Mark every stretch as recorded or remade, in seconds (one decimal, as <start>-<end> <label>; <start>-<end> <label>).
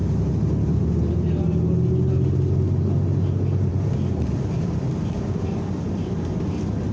0.0-0.8 remade; 0.8-3.7 recorded; 3.7-5.4 remade; 5.4-6.9 recorded